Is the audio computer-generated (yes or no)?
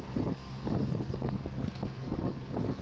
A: yes